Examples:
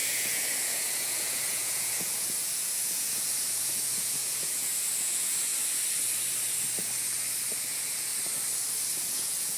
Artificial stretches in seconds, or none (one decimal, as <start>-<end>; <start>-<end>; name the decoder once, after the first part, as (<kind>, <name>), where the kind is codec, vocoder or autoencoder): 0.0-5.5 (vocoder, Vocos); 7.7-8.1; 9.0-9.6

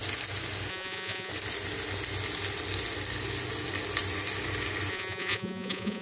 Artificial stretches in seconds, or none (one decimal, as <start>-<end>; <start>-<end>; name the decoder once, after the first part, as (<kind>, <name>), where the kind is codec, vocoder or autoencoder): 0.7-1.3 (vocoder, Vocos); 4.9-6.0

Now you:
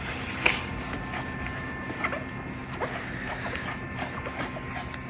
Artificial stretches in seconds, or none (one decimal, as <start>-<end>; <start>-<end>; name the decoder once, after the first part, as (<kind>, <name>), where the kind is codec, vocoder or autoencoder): none